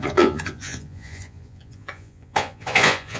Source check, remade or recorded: remade